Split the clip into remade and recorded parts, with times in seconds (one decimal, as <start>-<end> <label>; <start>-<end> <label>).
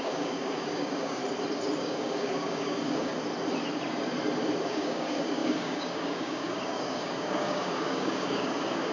0.0-1.2 remade; 1.2-1.8 recorded; 1.8-3.1 remade; 3.1-4.6 recorded; 4.6-8.9 remade